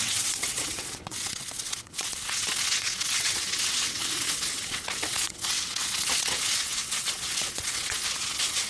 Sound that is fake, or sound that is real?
fake